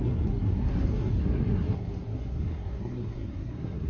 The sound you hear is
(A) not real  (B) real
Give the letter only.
A